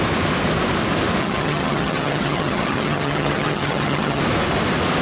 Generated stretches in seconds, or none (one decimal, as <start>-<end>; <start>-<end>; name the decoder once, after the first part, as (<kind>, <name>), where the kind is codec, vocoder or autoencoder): 1.2-4.2 (vocoder, HiFi-GAN)